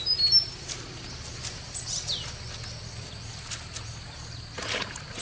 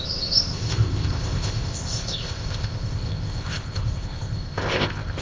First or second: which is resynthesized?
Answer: second